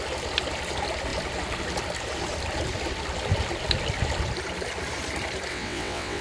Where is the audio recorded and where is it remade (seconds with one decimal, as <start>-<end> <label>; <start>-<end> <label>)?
0.0-5.5 recorded; 5.5-6.2 remade